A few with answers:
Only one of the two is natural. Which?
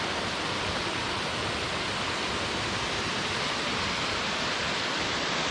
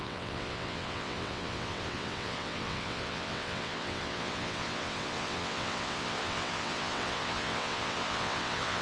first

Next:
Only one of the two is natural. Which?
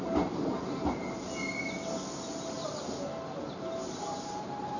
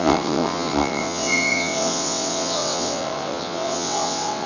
first